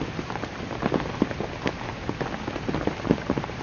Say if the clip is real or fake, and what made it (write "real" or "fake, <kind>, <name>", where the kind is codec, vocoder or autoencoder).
real